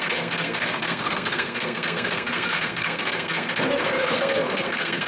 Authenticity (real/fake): fake